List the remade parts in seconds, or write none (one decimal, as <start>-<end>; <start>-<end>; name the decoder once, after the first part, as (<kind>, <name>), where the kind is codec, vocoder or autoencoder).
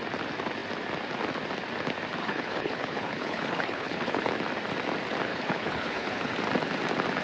2.2-4.3 (codec, HILCodec); 5.3-6.3